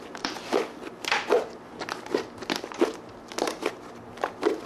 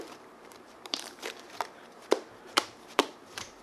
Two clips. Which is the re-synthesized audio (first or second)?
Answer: second